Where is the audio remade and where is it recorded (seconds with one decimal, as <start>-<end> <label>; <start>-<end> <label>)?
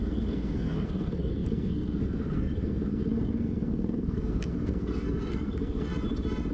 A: 0.0-5.9 remade; 5.9-6.5 recorded